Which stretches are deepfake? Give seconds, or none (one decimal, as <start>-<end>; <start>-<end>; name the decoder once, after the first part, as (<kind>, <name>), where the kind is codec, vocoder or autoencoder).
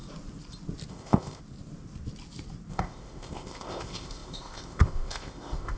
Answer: 0.9-1.4 (codec, ZipCodec); 2.7-5.8